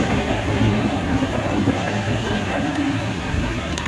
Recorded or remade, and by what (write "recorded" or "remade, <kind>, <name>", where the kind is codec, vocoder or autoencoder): remade, codec, SNAC